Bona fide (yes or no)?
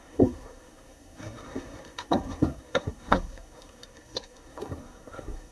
no